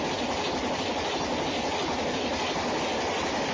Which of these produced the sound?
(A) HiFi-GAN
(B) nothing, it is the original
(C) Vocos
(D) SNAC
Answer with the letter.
B